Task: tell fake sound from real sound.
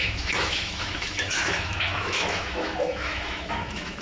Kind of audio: fake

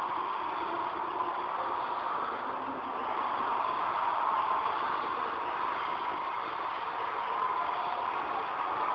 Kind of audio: real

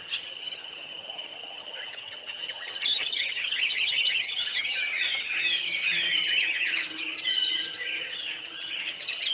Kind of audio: fake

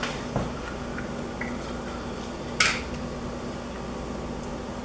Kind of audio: real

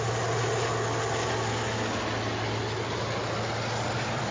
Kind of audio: real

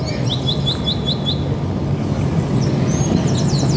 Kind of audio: real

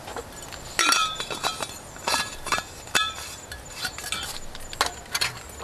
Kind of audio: real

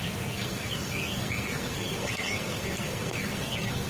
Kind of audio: fake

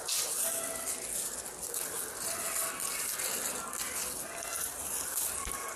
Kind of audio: real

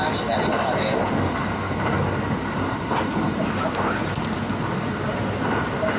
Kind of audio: real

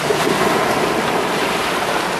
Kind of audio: real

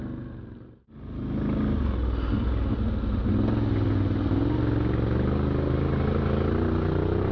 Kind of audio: real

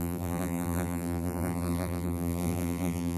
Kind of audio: fake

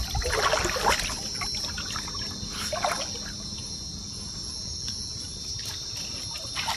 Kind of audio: real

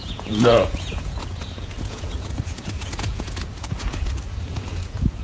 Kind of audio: fake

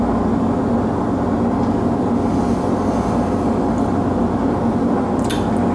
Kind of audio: real